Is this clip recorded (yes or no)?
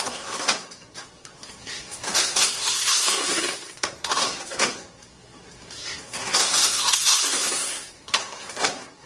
no